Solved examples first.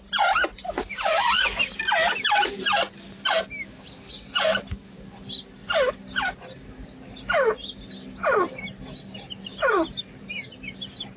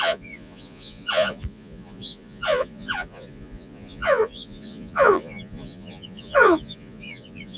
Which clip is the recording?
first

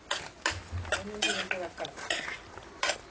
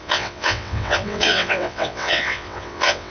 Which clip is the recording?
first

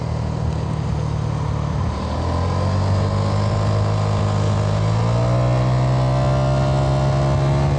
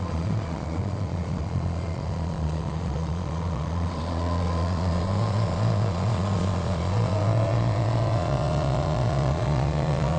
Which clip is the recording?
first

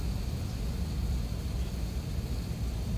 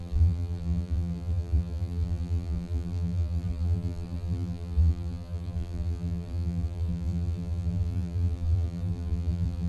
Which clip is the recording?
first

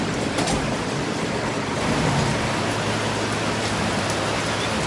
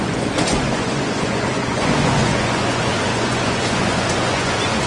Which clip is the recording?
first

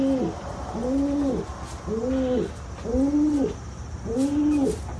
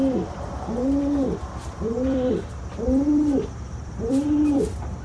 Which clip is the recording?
first